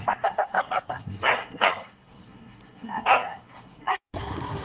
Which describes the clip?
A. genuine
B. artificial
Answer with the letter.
B